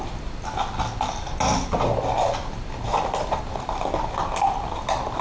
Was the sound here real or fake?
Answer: real